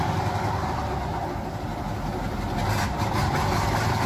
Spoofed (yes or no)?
no